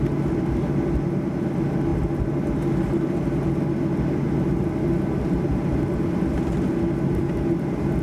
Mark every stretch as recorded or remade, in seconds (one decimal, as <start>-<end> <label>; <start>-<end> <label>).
0.0-8.0 recorded